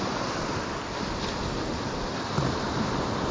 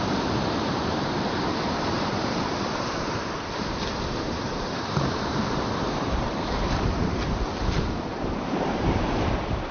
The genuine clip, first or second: first